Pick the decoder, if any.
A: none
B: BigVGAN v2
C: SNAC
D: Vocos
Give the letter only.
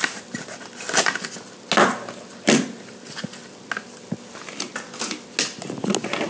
A